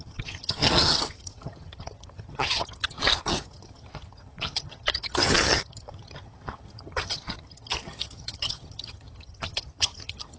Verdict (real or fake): fake